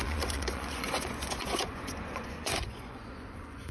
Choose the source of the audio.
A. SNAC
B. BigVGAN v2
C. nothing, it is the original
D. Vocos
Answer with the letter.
D